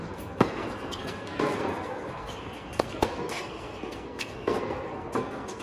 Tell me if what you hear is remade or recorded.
remade